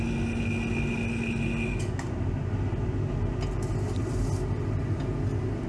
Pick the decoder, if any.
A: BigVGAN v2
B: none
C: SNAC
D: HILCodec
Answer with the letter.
B